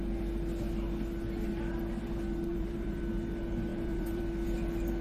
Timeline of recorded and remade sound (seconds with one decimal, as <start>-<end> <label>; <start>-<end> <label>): 0.0-2.5 recorded; 2.5-3.0 remade; 3.0-3.7 recorded; 3.7-4.2 remade; 4.2-5.0 recorded